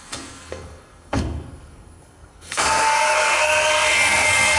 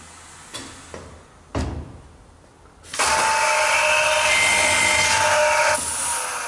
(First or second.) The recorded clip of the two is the second